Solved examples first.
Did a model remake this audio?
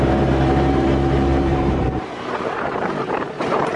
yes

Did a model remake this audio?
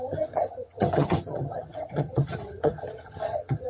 yes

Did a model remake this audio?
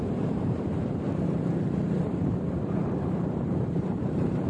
yes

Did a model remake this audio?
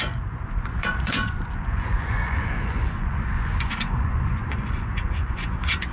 yes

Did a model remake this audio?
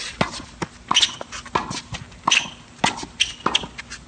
no